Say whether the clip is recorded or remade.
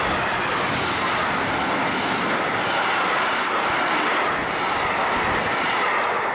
recorded